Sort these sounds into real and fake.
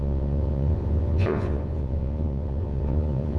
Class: fake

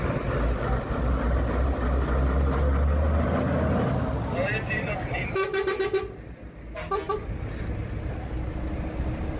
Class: real